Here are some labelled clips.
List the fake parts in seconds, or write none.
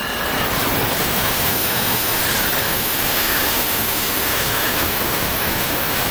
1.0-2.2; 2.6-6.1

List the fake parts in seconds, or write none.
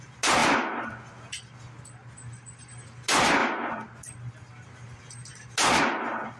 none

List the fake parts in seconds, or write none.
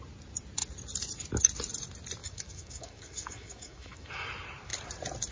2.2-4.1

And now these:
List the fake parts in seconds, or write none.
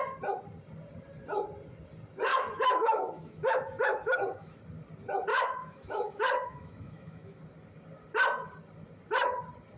2.3-4.6; 5.3-7.4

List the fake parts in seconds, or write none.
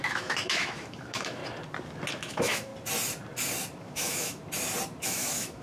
0.0-1.4; 2.1-2.7; 3.8-4.4; 5.0-5.6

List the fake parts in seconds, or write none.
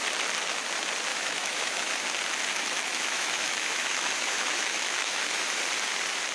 1.1-1.9; 2.5-5.6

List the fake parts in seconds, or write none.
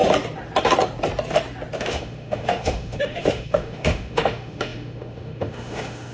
1.8-6.1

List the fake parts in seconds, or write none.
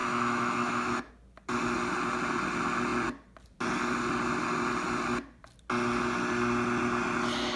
0.0-1.1